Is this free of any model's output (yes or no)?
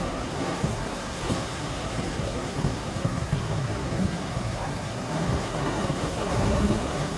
no